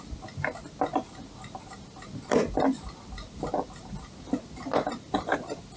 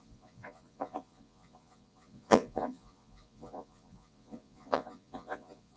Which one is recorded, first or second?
first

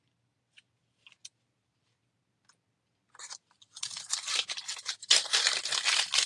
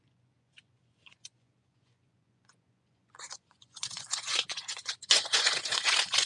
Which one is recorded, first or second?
first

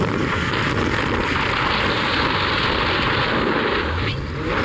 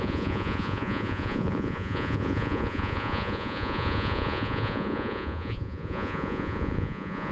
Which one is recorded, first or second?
first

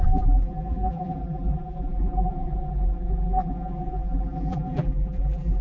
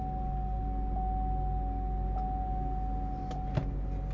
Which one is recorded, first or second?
second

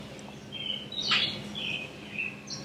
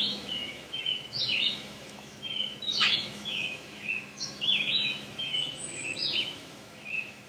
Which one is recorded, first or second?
first